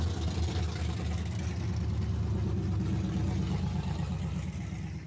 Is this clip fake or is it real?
real